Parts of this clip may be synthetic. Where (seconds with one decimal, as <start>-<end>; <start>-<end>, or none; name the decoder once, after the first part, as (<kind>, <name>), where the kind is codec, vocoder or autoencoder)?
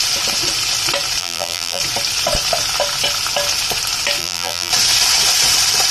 1.2-1.8 (vocoder, BigVGAN v2); 4.2-4.7